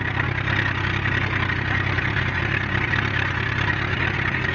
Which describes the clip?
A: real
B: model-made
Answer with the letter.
A